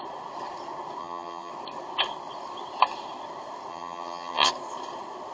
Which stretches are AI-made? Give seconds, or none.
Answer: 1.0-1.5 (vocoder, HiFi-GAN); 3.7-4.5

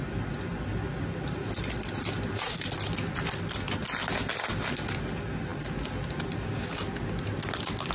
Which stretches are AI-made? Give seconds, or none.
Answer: none

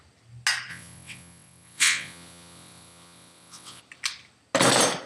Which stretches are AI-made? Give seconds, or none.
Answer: 0.7-3.8 (vocoder, WaveNeXt)

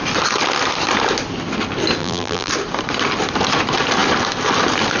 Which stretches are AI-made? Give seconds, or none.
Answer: 2.0-2.5 (vocoder, BigVGAN v2)